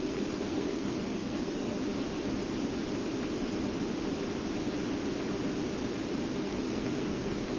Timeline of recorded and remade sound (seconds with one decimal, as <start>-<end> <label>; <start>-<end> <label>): 0.0-1.8 remade; 1.8-6.4 recorded; 6.4-7.6 remade